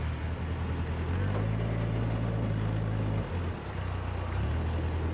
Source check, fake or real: real